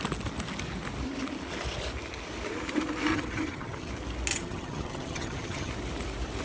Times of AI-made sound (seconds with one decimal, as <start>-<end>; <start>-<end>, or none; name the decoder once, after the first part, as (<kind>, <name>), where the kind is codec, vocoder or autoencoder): 3.1-3.9 (vocoder, HiFi-GAN); 4.3-5.7